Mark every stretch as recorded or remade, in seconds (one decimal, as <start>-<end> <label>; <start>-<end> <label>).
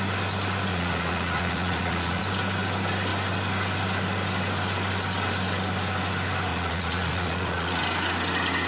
0.0-0.7 recorded; 0.7-2.2 remade; 2.2-6.5 recorded; 6.5-7.8 remade; 7.8-8.7 recorded